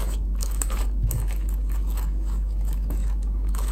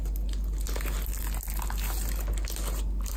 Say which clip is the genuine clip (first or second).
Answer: second